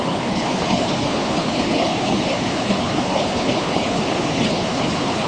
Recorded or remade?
remade